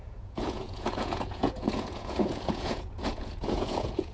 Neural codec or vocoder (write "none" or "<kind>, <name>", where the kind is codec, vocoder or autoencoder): vocoder, Vocos